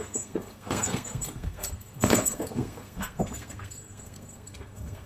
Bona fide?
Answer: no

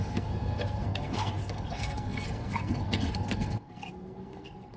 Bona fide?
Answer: no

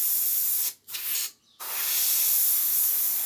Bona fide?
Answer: yes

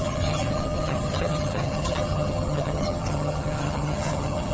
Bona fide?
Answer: no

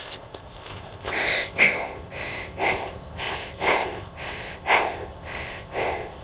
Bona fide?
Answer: no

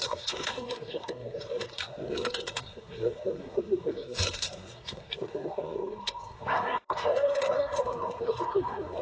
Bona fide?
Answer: no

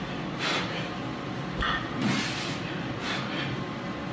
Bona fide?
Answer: yes